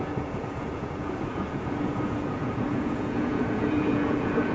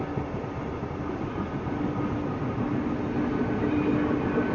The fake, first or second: first